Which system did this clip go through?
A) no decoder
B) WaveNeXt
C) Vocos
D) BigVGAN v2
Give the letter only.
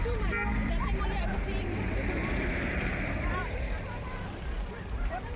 D